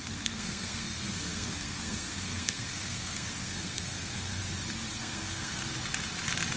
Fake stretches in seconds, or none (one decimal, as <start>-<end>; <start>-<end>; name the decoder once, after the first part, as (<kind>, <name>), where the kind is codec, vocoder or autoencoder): 0.0-4.4 (codec, SNAC); 5.0-5.6